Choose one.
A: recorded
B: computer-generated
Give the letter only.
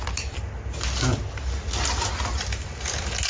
A